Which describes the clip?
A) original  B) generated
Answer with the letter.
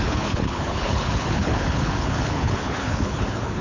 B